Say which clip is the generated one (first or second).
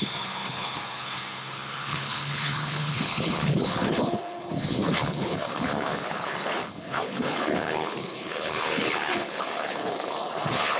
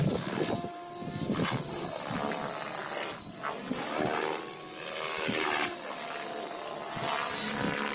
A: first